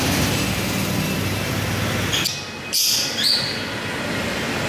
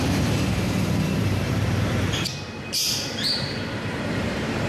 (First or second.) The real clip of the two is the first